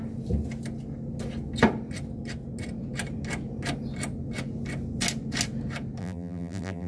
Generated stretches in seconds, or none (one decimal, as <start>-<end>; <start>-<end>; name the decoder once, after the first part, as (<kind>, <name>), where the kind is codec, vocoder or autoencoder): 6.0-6.9 (vocoder, BigVGAN v2)